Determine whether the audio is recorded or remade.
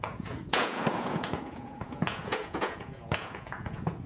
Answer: remade